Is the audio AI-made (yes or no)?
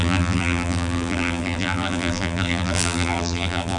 yes